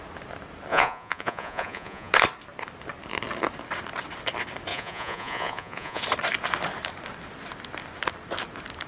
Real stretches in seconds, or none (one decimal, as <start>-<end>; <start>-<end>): 0.0-0.7; 2.1-4.7; 6.0-8.9